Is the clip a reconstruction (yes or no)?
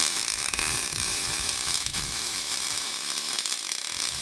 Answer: yes